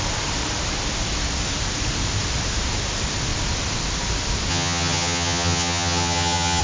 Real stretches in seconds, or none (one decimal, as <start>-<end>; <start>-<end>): 0.0-4.5